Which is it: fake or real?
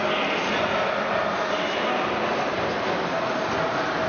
real